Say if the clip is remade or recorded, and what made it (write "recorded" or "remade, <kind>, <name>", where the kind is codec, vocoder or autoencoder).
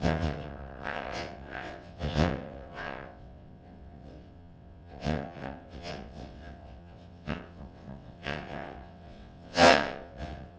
remade, vocoder, WaveNeXt